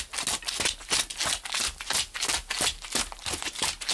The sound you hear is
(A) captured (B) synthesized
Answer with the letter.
A